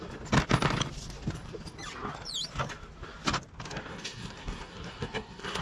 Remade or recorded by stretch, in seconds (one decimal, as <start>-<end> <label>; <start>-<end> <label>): 0.0-3.9 recorded; 3.9-5.6 remade